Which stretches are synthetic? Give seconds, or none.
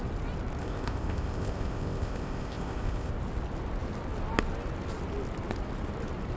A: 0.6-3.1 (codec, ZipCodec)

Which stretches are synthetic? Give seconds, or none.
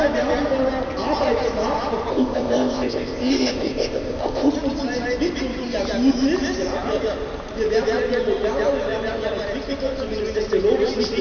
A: 2.1-4.5 (codec, ZipCodec)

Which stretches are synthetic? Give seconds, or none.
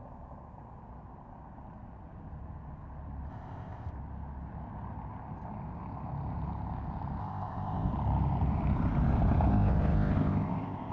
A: 3.3-3.9 (codec, ZipCodec); 7.2-7.9; 9.5-10.9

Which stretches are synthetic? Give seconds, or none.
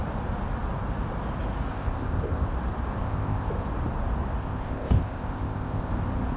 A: 1.7-2.5 (codec, ZipCodec); 3.0-3.5; 4.4-5.9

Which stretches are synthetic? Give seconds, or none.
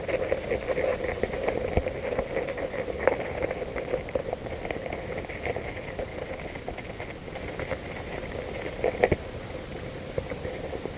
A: none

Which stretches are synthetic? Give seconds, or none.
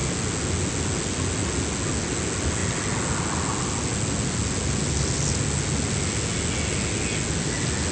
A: none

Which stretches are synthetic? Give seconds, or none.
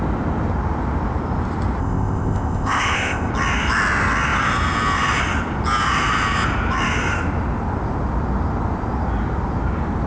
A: 1.8-3.3 (codec, ZipCodec)